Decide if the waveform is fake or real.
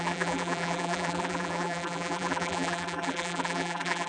fake